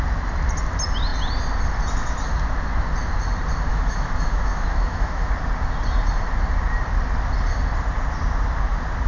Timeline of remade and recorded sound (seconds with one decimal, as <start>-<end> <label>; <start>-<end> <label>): 0.0-3.7 recorded; 3.7-5.3 remade; 5.3-9.1 recorded